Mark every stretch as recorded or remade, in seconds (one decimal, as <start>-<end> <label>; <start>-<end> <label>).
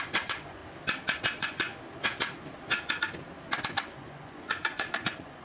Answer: 0.0-0.6 remade; 0.6-1.2 recorded; 1.2-1.7 remade; 1.7-3.7 recorded; 3.7-5.4 remade